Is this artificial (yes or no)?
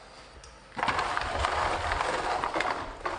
no